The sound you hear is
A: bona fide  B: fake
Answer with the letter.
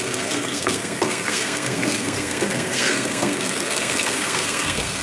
B